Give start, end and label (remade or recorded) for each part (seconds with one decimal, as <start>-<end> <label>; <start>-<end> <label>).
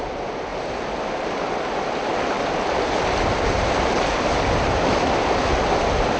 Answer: 0.0-6.2 recorded